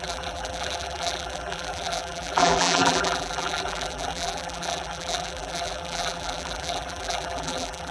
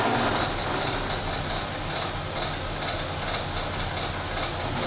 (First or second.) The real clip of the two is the second